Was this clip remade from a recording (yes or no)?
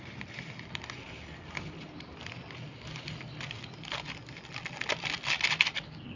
no